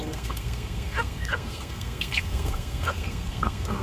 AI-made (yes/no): yes